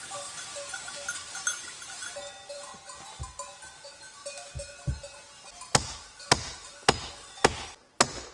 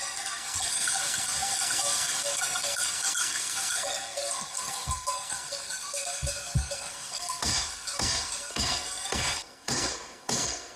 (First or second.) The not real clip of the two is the second